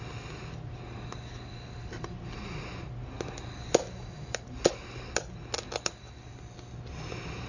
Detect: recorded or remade recorded